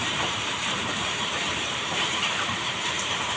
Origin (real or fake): fake